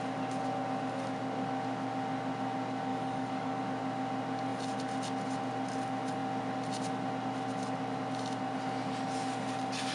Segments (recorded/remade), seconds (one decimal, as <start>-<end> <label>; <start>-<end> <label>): 0.0-2.9 recorded; 2.9-3.6 remade; 3.6-9.9 recorded